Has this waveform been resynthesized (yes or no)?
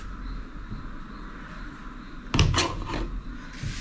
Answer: no